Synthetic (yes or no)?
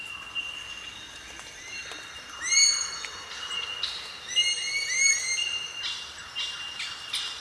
no